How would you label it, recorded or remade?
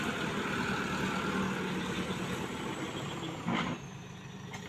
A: recorded